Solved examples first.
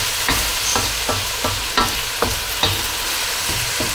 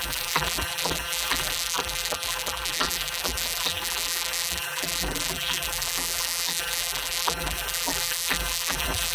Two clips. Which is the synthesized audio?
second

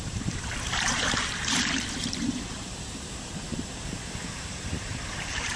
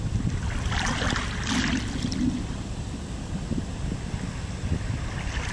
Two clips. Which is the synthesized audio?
first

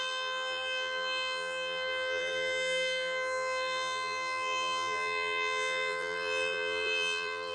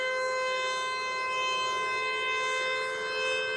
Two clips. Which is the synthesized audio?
first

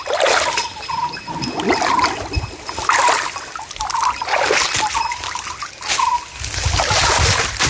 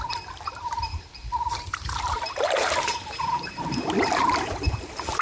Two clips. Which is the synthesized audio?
second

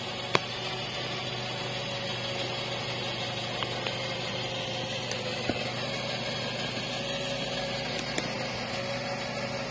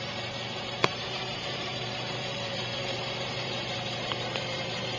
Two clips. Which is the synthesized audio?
second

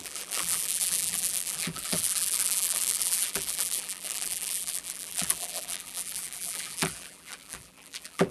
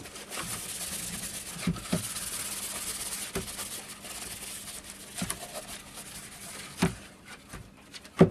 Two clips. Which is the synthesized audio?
first